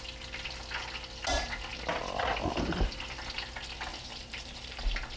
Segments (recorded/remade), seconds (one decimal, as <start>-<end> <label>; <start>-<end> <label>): 0.0-3.9 recorded; 3.9-4.8 remade; 4.8-5.2 recorded